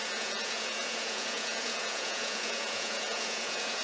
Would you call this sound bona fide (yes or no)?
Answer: no